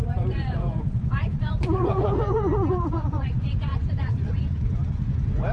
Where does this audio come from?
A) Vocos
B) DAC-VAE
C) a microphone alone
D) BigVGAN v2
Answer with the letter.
A